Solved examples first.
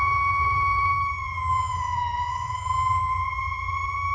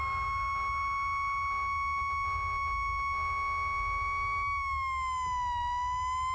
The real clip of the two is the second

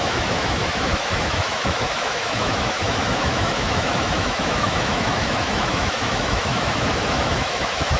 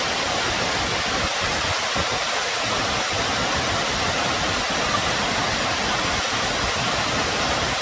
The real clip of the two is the second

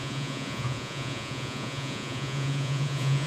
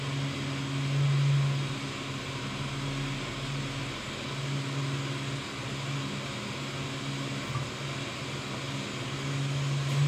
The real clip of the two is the second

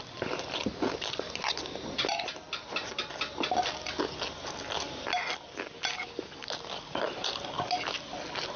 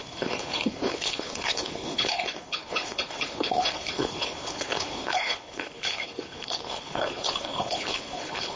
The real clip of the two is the first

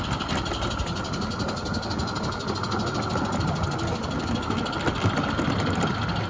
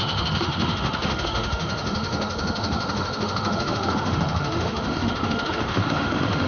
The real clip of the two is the first